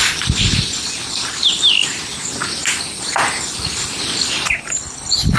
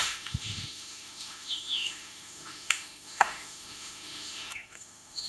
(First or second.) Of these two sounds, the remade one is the second